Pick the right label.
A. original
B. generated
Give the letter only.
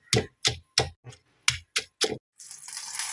A